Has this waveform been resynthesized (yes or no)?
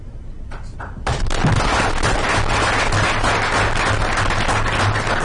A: no